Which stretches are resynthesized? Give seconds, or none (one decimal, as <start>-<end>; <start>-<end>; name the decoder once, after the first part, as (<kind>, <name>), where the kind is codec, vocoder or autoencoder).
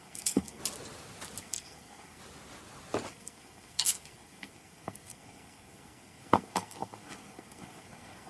0.0-0.6 (codec, SNAC); 1.4-2.2; 3.1-8.3